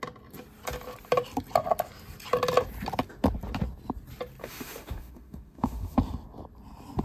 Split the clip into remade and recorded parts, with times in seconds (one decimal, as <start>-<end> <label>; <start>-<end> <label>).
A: 0.0-4.4 recorded; 4.4-6.0 remade; 6.0-7.0 recorded